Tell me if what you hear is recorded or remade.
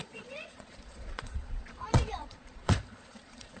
remade